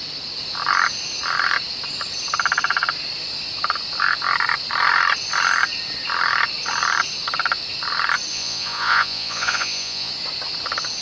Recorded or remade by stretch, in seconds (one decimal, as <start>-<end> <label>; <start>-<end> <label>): 0.0-8.3 recorded; 8.3-10.1 remade; 10.1-11.0 recorded